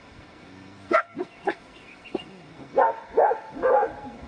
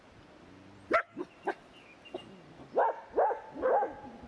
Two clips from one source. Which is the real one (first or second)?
second